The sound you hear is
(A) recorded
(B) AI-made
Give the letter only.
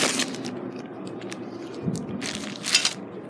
A